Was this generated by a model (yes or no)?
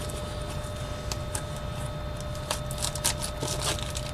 no